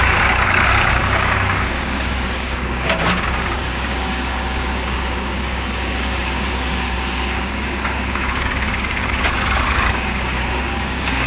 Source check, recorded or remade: remade